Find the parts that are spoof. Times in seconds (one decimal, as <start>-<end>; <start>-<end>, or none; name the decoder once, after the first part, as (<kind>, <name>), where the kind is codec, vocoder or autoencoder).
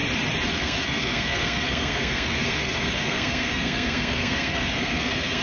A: 0.5-5.4 (codec, SNAC)